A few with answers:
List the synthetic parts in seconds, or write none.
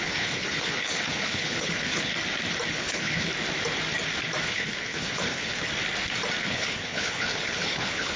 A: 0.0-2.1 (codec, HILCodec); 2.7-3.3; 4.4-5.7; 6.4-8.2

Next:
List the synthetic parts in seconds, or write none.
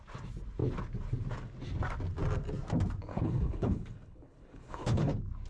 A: 3.1-5.1 (codec, HILCodec)